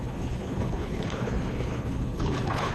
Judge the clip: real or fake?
fake